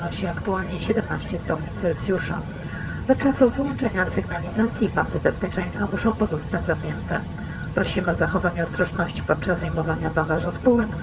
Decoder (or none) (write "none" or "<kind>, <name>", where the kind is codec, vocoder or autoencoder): vocoder, HiFi-GAN